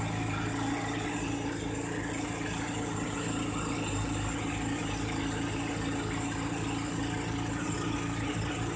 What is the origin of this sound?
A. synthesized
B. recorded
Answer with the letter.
B